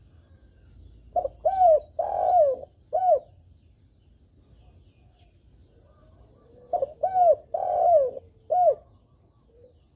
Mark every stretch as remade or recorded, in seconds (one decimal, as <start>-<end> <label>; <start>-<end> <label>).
0.0-10.0 recorded